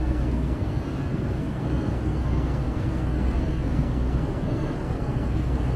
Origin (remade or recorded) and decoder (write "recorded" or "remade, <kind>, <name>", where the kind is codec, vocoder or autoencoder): remade, codec, SNAC